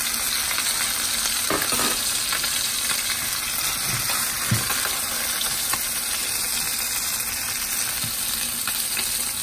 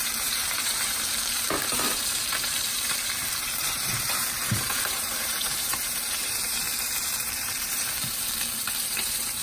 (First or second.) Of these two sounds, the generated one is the second